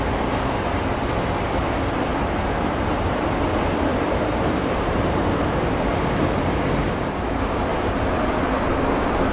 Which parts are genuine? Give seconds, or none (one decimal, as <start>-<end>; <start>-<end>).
0.0-2.1; 3.2-3.9; 6.9-7.7; 8.5-9.3